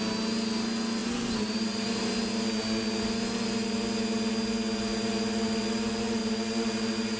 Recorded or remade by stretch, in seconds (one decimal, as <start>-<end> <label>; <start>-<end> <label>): 0.0-1.0 recorded; 1.0-2.1 remade; 2.1-7.2 recorded